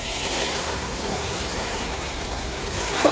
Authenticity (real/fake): fake